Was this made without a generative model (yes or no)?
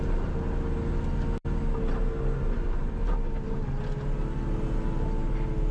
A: yes